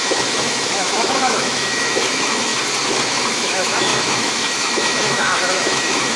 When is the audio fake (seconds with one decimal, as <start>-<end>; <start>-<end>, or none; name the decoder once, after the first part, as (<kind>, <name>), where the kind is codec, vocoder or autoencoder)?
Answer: 0.0-2.5 (autoencoder, DAC-VAE); 3.3-6.2